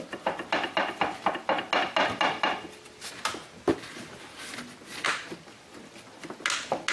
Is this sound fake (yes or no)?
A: no